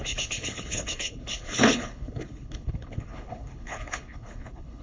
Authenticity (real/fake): fake